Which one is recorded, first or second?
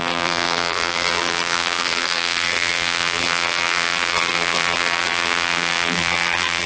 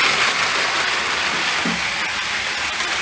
second